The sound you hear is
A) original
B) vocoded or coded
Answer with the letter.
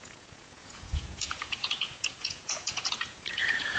B